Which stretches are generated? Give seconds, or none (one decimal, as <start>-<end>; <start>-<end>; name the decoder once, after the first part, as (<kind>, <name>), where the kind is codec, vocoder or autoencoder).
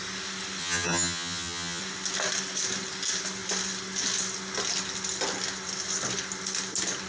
0.6-1.8 (vocoder, HiFi-GAN)